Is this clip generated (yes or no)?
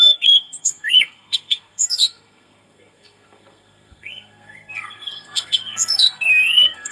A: yes